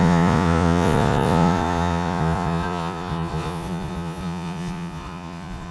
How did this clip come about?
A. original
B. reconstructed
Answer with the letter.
B